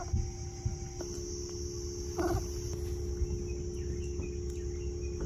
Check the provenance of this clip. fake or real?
real